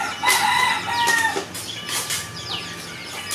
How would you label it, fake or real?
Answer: real